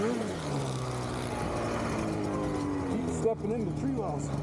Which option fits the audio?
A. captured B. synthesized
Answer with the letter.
A